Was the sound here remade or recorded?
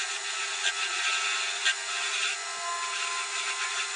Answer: recorded